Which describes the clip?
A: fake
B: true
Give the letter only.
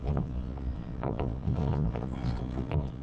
A